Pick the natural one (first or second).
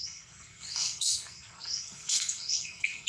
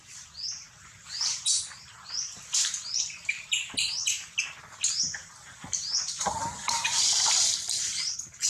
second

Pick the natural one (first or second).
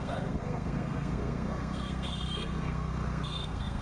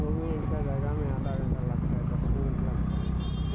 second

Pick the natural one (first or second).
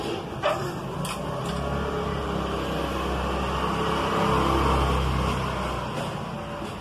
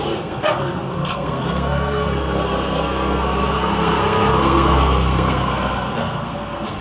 first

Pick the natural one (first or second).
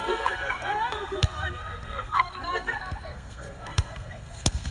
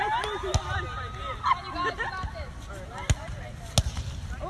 second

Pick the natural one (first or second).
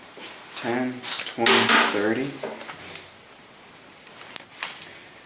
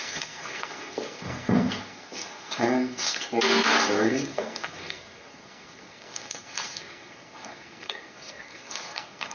first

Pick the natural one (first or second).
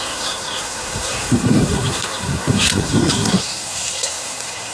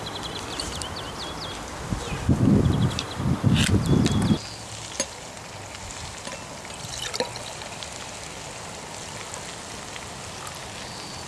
second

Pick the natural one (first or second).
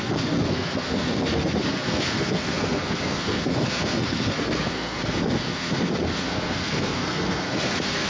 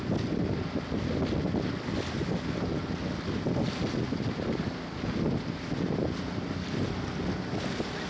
second